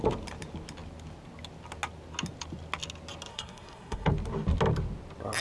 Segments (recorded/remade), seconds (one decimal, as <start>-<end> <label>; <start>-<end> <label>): 0.0-3.3 recorded; 3.3-4.1 remade; 4.1-5.4 recorded